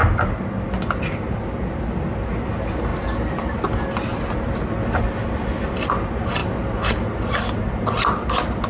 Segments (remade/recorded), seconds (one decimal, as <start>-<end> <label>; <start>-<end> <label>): 0.0-8.7 recorded